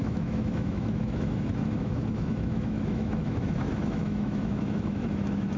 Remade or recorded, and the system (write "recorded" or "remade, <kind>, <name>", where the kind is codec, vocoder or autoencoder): remade, autoencoder, DAC-VAE